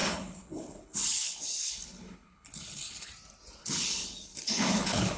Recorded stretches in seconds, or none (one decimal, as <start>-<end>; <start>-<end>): 3.1-3.6